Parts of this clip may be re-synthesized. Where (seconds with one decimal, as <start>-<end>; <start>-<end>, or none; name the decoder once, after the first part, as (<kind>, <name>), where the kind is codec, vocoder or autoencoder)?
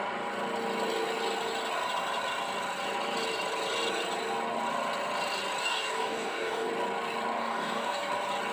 5.6-6.7 (codec, DAC); 7.4-8.1